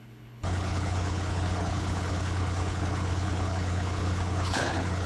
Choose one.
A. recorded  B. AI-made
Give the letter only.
B